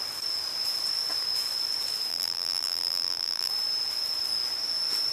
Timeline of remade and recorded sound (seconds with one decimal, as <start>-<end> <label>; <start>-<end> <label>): 0.0-2.1 recorded; 2.1-3.5 remade; 3.5-5.1 recorded